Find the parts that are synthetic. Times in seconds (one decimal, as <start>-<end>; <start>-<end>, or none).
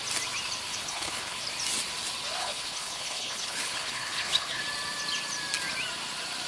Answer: 0.7-1.4; 2.4-4.6